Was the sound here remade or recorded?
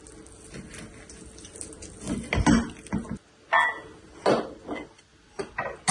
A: recorded